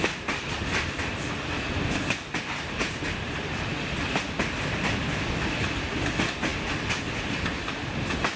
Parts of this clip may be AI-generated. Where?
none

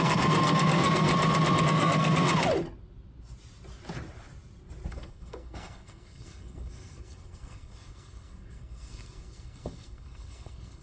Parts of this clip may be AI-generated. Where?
0.0-1.1; 1.6-2.3; 4.9-10.8

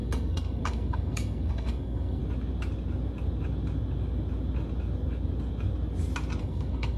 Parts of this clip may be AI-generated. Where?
0.0-2.2; 6.4-7.0

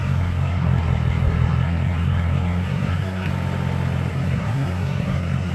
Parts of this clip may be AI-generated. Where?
0.0-3.3; 4.1-5.5